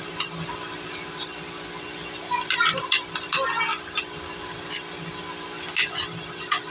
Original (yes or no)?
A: yes